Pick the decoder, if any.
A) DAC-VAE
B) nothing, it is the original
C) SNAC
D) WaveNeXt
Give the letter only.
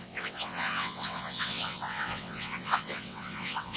D